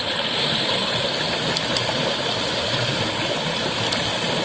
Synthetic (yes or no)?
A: no